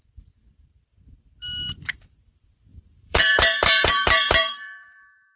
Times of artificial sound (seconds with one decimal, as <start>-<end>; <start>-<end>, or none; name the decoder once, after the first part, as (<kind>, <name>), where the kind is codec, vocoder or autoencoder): 2.7-5.4 (vocoder, BigVGAN v2)